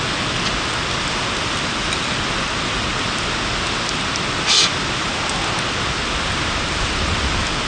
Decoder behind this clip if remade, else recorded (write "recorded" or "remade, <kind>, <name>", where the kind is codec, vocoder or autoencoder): recorded